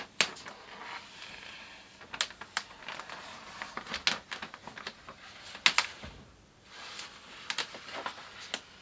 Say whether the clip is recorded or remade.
recorded